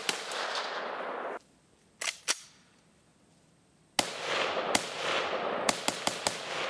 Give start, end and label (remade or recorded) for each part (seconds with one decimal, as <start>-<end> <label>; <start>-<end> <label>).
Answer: 0.0-6.7 recorded